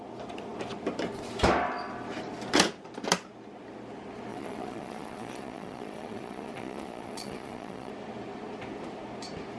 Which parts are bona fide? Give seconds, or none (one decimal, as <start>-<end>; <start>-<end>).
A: 0.0-4.3; 7.9-9.6